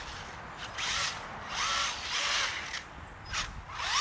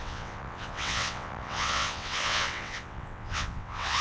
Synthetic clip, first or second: second